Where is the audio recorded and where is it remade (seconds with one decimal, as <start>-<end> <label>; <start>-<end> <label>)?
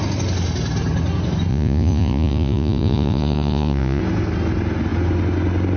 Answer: 0.0-1.5 recorded; 1.5-4.0 remade; 4.0-5.8 recorded